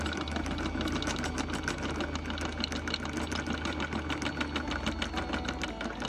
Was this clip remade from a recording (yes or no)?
no